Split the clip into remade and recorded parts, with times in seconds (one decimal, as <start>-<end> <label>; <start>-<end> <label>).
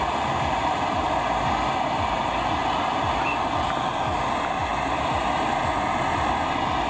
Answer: 0.0-4.7 recorded; 4.7-5.5 remade; 5.5-6.9 recorded